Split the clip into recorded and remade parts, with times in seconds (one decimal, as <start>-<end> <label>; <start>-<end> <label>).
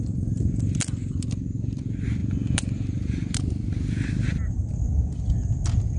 0.0-6.0 recorded